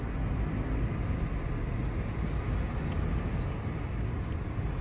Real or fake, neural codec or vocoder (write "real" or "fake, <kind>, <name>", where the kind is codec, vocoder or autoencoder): real